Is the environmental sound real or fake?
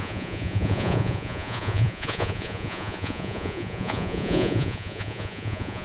fake